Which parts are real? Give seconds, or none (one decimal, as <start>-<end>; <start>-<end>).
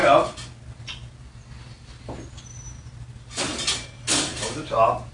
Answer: 0.0-5.1